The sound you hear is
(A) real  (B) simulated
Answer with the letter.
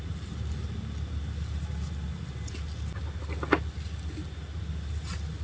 A